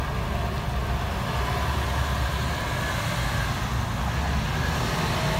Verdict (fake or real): real